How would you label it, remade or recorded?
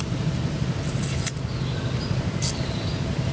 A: recorded